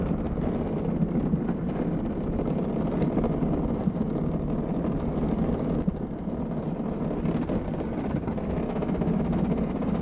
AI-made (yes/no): no